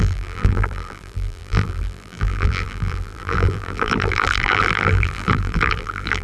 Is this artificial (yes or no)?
yes